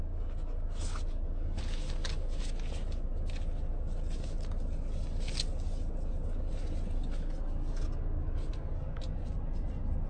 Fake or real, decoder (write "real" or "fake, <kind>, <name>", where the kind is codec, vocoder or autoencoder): real